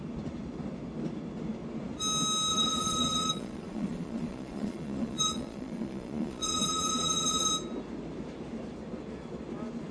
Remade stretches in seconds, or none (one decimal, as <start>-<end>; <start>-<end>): 2.5-7.5